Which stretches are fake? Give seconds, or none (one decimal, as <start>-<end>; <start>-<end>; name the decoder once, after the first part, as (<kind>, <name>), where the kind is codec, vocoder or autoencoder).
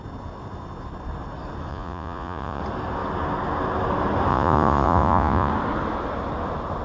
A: 1.7-2.6 (vocoder, Vocos); 4.3-5.5